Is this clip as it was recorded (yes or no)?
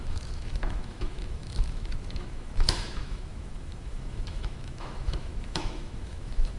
no